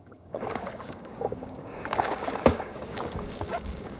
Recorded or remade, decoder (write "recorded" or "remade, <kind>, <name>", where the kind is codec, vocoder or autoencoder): remade, codec, DAC